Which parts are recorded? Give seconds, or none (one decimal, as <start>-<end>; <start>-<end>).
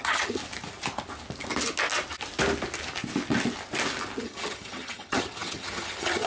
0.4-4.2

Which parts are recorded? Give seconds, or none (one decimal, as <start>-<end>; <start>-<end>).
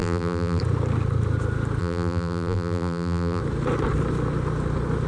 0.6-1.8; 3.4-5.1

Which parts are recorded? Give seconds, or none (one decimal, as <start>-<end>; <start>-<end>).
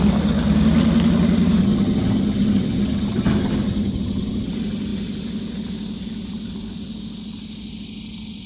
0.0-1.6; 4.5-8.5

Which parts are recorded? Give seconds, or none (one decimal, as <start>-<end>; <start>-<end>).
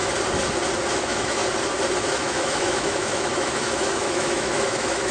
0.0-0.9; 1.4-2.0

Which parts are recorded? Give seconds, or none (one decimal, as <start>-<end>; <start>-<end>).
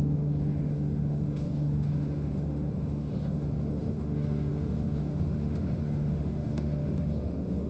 none